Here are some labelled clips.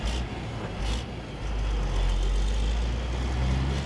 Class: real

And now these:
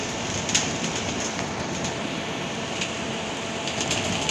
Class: real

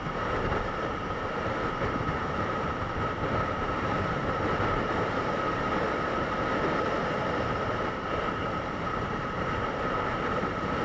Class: fake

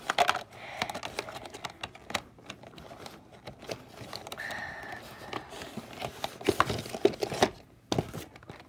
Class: real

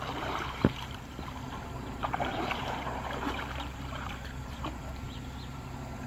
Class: fake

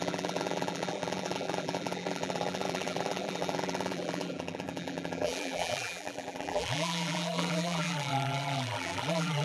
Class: fake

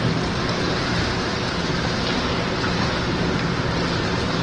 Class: fake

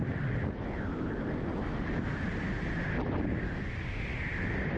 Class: real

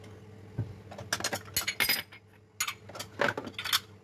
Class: real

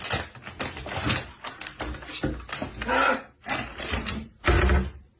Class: real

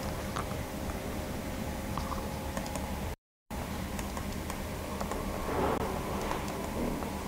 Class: fake